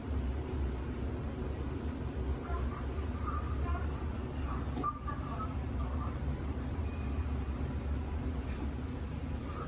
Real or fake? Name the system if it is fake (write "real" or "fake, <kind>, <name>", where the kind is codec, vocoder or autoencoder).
fake, vocoder, BigVGAN v2